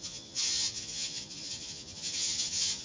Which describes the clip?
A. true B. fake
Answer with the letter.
B